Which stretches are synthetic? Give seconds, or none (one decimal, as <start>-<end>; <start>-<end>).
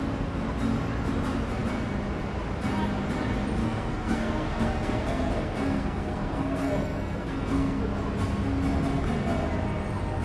3.6-7.8